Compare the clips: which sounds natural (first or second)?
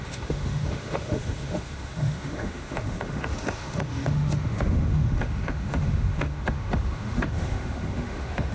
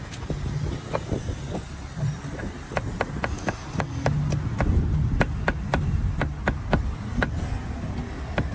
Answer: second